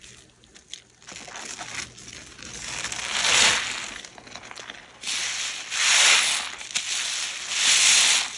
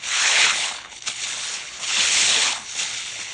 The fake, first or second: second